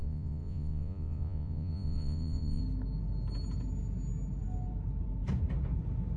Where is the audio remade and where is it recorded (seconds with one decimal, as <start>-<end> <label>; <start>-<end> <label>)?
0.0-2.6 remade; 2.6-6.2 recorded